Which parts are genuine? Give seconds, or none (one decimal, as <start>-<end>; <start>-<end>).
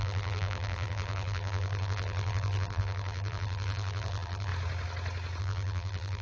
4.5-5.4